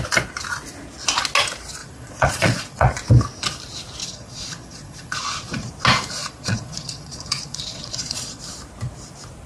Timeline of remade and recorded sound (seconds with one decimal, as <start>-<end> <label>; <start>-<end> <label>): 0.0-1.8 recorded; 1.8-2.9 remade; 2.9-4.0 recorded; 4.0-5.7 remade; 5.7-6.2 recorded; 6.2-8.4 remade; 8.4-9.5 recorded